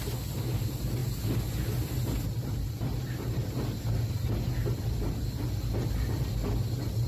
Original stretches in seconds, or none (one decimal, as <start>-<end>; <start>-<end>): 0.0-7.1